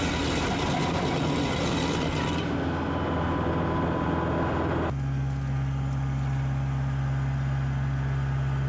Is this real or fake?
real